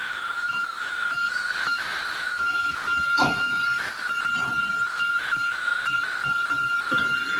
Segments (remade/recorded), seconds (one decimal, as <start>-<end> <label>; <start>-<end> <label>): 0.0-3.6 remade; 3.6-4.9 recorded; 4.9-5.7 remade; 5.7-7.4 recorded